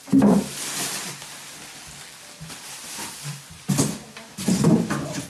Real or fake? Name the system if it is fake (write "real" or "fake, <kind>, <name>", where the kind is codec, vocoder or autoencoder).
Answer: real